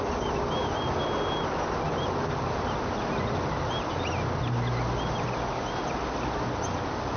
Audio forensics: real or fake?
real